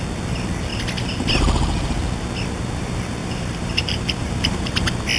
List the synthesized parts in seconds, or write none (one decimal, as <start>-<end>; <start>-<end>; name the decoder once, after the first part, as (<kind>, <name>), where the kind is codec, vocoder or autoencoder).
3.2-4.8 (vocoder, BigVGAN v2)